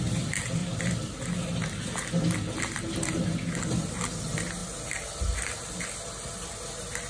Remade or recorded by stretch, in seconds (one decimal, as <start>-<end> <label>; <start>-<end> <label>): 0.0-0.6 recorded; 0.6-1.2 remade; 1.2-4.6 recorded; 4.6-5.8 remade; 5.8-7.1 recorded